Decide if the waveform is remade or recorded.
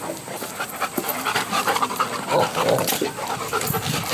recorded